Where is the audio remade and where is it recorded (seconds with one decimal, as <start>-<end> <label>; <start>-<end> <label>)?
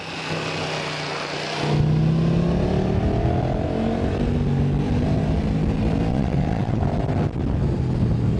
0.0-6.1 recorded; 6.1-6.8 remade; 6.8-8.4 recorded